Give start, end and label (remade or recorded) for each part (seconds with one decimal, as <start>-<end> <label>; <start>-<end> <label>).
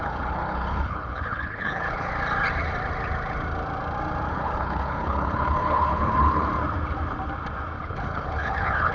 0.0-2.1 remade; 2.1-4.3 recorded; 4.3-6.5 remade; 6.5-7.8 recorded; 7.8-8.9 remade